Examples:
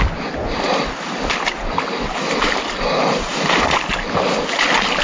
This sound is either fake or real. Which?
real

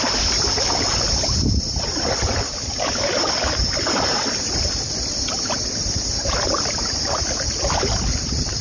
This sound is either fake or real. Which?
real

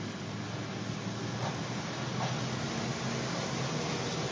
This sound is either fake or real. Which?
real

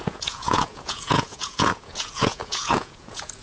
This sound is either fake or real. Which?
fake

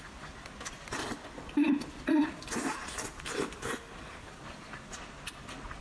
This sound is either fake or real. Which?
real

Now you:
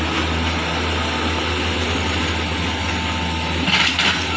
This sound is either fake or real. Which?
real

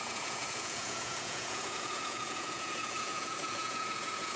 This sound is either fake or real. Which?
fake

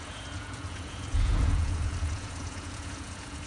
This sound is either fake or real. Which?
fake